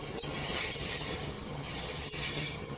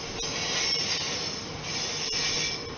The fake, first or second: first